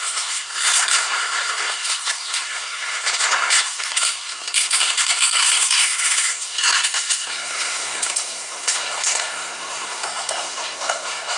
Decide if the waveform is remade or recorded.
remade